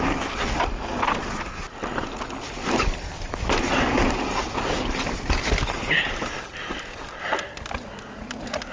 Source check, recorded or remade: recorded